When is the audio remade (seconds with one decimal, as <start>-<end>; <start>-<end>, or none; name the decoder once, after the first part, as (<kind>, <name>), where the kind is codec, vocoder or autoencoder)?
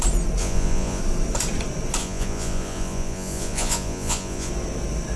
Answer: 0.4-1.0 (vocoder, Vocos); 2.0-4.5